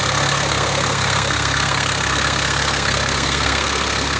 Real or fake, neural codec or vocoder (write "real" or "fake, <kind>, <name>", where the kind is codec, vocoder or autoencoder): fake, codec, SNAC